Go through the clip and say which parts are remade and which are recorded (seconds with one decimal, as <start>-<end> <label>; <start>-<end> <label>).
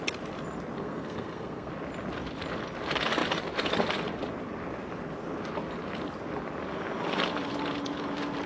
0.0-0.8 recorded; 0.8-1.7 remade; 1.7-8.5 recorded